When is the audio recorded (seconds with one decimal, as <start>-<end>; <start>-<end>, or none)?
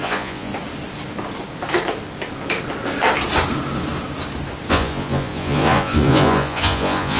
0.5-4.7